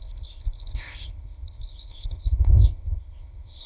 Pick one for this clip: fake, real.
fake